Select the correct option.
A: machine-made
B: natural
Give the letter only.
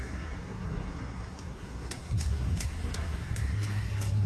A